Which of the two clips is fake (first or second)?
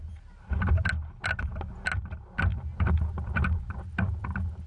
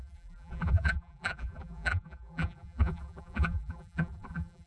second